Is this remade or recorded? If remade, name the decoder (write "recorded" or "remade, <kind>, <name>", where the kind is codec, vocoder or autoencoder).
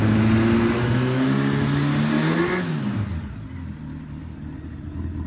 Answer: recorded